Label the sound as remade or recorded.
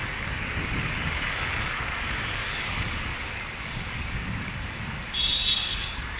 remade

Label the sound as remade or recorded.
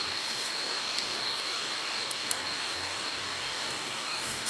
remade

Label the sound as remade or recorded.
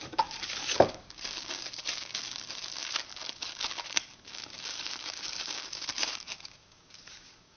remade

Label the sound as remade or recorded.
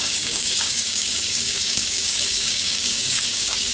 remade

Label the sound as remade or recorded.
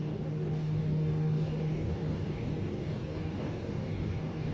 remade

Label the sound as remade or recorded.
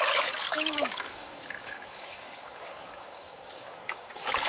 remade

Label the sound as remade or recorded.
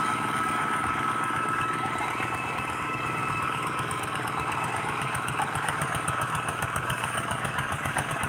remade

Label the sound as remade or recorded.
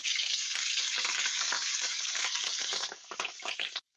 remade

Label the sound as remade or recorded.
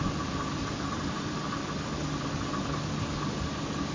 recorded